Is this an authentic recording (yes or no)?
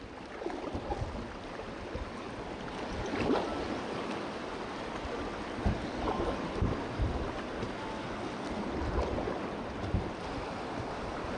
yes